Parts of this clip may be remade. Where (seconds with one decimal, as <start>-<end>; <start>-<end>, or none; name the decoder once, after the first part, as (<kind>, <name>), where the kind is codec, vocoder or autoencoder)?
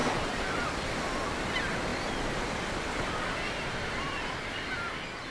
0.9-5.3 (vocoder, BigVGAN v2)